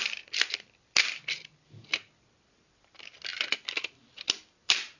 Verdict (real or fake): fake